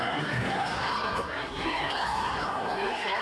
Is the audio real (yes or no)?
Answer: no